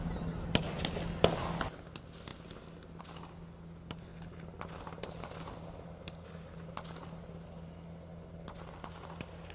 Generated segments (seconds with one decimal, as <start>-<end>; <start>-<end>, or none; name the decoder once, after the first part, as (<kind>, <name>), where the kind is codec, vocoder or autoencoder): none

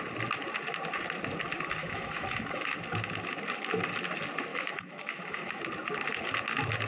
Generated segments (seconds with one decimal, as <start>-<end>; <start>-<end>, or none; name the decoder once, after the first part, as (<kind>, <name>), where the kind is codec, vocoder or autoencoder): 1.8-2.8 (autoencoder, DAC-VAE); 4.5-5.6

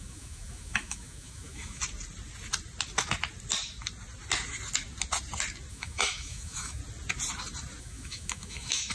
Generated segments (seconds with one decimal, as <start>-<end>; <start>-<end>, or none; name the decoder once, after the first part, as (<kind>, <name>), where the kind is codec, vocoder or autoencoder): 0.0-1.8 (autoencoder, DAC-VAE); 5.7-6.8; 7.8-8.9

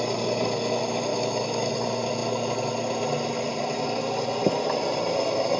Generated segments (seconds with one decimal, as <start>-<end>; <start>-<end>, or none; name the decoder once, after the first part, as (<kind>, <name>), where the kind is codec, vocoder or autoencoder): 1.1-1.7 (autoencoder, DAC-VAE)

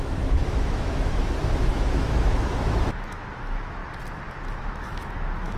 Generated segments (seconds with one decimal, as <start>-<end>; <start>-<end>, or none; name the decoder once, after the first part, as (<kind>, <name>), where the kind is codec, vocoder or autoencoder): 0.0-3.8 (autoencoder, DAC-VAE); 4.6-5.6

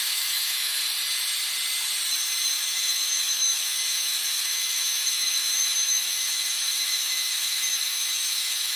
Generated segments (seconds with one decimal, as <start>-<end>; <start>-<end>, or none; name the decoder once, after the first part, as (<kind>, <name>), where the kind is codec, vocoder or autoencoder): 0.0-0.8 (autoencoder, DAC-VAE); 2.5-8.8